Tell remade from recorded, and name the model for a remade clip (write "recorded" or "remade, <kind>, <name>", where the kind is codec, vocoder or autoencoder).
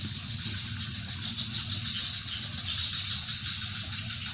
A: recorded